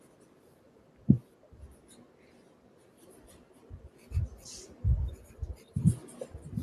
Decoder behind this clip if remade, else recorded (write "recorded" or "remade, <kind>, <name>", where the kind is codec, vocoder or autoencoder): remade, vocoder, BigVGAN v2